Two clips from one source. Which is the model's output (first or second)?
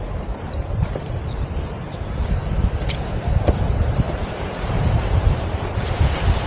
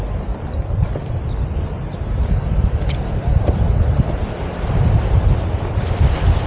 first